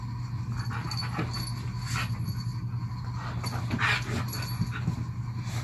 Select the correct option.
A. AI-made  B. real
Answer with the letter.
B